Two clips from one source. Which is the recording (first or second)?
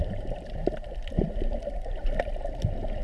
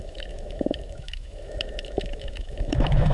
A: first